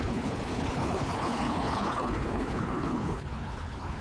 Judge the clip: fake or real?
fake